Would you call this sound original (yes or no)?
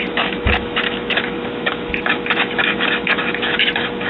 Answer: no